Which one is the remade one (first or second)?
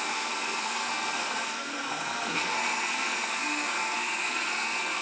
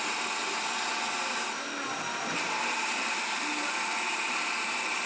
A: first